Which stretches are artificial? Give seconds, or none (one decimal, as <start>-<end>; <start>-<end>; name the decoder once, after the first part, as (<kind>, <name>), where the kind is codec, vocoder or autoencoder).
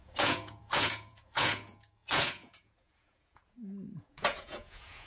0.0-5.1 (vocoder, Vocos)